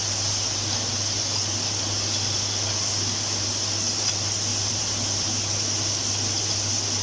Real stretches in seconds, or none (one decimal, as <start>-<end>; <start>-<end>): 0.0-4.5; 6.1-7.0